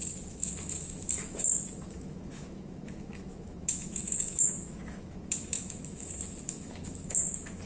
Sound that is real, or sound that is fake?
fake